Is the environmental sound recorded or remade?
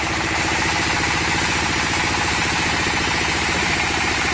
remade